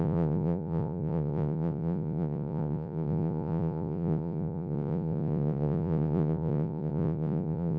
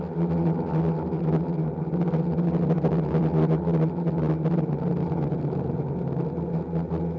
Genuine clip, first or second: second